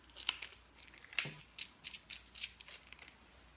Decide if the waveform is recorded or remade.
recorded